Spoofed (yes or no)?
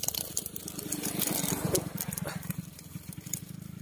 no